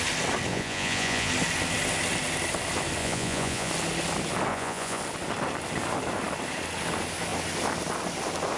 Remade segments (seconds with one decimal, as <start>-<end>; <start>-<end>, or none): 0.5-1.3; 3.0-3.7; 4.5-5.0